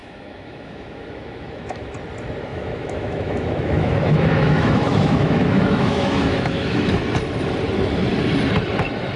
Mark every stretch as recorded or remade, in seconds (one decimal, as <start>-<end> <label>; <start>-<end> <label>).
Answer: 0.0-1.9 remade; 1.9-2.5 recorded; 2.5-7.0 remade; 7.0-9.2 recorded